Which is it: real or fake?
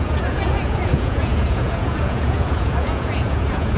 fake